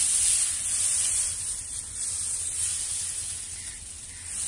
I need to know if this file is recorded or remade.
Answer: recorded